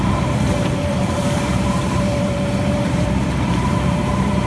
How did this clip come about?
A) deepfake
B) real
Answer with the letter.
A